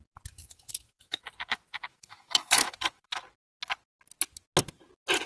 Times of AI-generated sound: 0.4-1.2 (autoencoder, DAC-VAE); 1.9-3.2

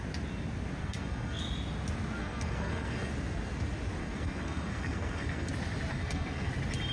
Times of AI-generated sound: 0.8-1.4 (codec, SNAC); 2.2-3.1; 4.0-5.5; 5.9-6.5

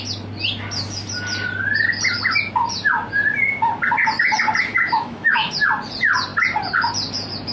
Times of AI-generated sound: 4.7-5.5 (autoencoder, DAC-VAE)

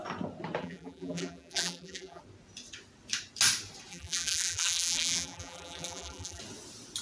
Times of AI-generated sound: 0.6-2.2 (vocoder, BigVGAN v2); 3.9-6.4